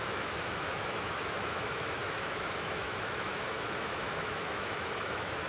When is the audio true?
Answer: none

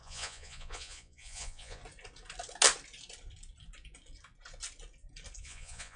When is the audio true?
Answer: 1.8-5.4